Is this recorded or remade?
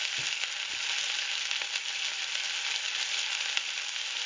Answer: recorded